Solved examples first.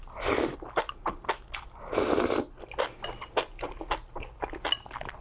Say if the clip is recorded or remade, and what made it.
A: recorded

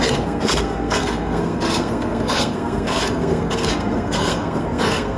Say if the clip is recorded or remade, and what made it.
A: remade, codec, SNAC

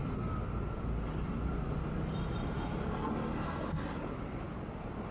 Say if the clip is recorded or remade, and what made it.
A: recorded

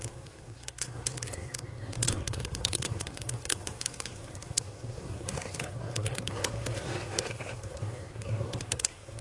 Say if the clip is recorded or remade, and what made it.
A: remade, codec, SNAC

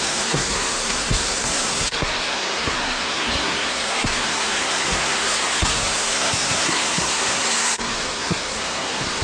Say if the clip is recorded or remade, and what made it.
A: remade, codec, SNAC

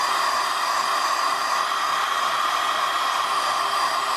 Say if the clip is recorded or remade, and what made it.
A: recorded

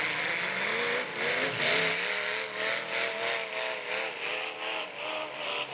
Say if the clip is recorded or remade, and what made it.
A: recorded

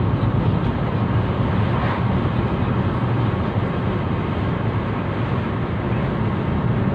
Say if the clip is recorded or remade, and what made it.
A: recorded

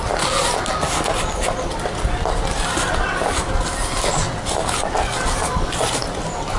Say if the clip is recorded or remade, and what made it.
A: recorded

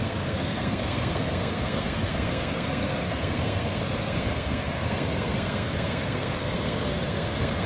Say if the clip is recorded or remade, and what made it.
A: remade, codec, SNAC